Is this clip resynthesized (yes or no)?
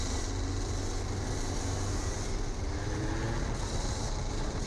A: no